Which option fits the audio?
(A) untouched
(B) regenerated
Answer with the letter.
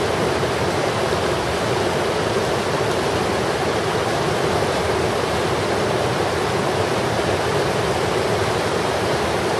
A